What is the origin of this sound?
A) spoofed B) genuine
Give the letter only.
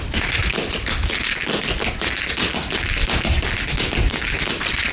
B